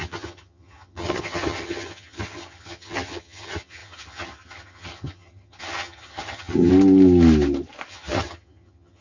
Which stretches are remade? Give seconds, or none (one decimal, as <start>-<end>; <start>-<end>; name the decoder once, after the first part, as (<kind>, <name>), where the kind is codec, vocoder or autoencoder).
0.0-6.7 (vocoder, HiFi-GAN); 7.9-9.0